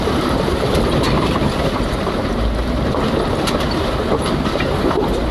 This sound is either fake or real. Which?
fake